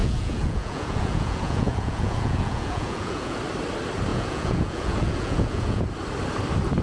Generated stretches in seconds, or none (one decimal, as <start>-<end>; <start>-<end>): 0.0-3.4; 4.1-5.8